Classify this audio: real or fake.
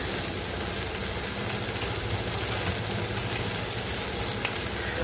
real